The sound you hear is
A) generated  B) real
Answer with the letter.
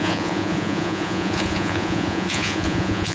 A